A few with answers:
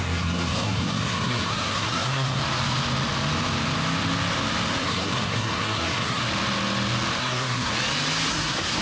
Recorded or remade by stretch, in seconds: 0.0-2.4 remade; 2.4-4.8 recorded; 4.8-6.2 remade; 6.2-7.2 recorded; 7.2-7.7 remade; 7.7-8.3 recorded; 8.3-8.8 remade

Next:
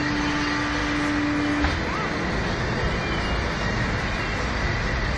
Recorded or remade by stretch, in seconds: 0.0-5.2 recorded

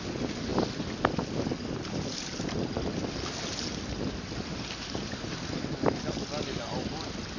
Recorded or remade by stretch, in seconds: 0.0-7.4 recorded

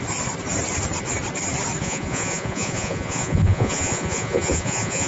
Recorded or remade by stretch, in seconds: 0.0-1.8 recorded; 1.8-5.1 remade

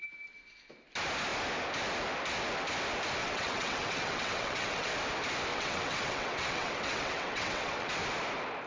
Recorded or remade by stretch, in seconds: 0.0-3.2 recorded; 3.2-4.9 remade; 4.9-5.5 recorded; 5.5-7.9 remade; 7.9-8.7 recorded

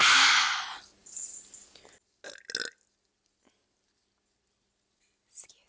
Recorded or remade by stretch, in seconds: 0.0-5.7 recorded